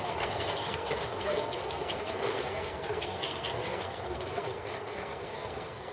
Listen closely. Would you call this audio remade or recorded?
remade